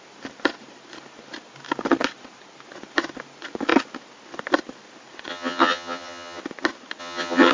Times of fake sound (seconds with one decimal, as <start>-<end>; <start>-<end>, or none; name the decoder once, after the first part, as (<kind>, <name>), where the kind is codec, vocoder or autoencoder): 5.3-6.4 (vocoder, HiFi-GAN); 7.0-7.5